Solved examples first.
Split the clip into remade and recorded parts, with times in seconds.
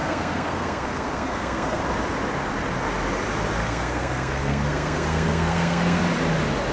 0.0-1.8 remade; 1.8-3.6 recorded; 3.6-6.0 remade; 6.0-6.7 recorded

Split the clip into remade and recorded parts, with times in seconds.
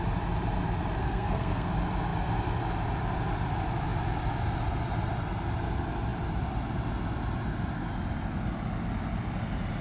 0.0-1.0 recorded; 1.0-1.7 remade; 1.7-9.8 recorded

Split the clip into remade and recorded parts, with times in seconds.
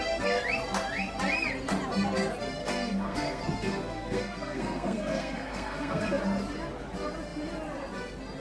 0.0-2.6 recorded; 2.6-6.2 remade; 6.2-8.4 recorded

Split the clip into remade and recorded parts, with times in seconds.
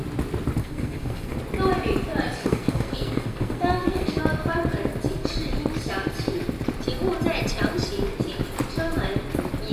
0.0-0.6 recorded; 0.6-1.4 remade; 1.4-2.4 recorded; 2.4-4.2 remade; 4.2-9.7 recorded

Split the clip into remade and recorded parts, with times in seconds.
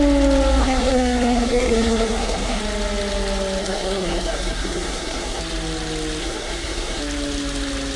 0.0-0.6 recorded; 0.6-2.6 remade; 2.6-3.6 recorded; 3.6-5.4 remade; 5.4-6.2 recorded; 6.2-7.0 remade; 7.0-8.0 recorded